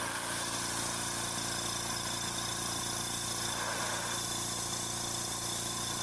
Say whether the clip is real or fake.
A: real